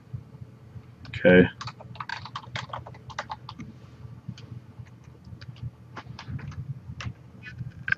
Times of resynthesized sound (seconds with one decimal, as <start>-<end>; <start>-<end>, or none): none